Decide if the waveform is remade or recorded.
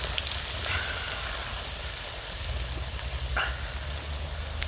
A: recorded